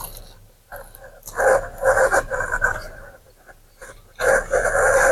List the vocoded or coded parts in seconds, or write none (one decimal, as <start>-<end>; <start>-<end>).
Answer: 1.8-3.3